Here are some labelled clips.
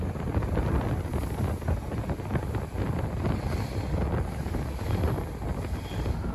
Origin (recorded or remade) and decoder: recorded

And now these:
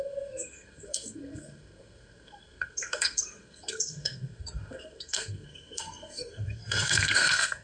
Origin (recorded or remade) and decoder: remade, codec, SNAC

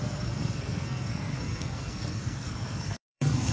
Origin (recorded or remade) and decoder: remade, codec, SNAC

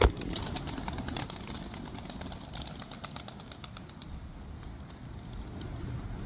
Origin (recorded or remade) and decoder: recorded